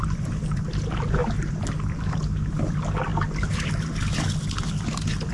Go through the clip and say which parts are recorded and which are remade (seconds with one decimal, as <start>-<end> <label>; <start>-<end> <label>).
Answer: 0.0-1.2 remade; 1.2-1.9 recorded; 1.9-5.3 remade